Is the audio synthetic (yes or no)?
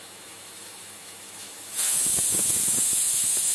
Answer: yes